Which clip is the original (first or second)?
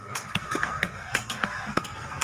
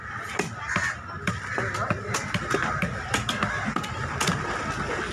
second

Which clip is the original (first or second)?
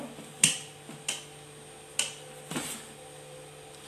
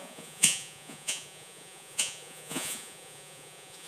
first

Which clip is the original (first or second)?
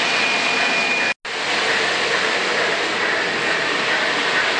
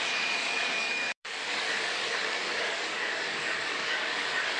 first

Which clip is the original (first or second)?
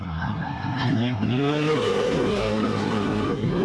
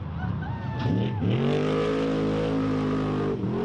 second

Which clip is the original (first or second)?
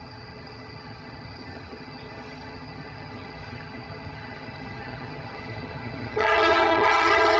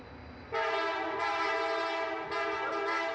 second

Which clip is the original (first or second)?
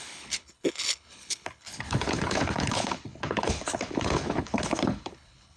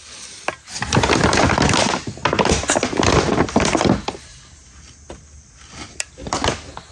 second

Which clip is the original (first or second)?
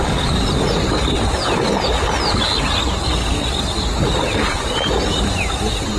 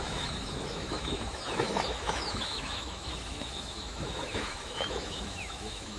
first